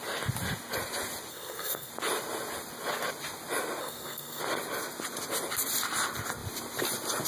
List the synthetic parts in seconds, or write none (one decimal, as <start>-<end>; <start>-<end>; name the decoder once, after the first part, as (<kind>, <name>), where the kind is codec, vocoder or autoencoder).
1.3-1.9 (codec, SNAC); 3.8-4.4